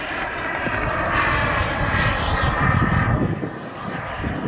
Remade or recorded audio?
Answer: recorded